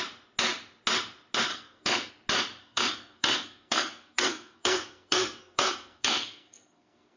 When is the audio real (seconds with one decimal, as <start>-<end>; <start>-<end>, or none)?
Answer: 0.0-1.5; 2.1-2.6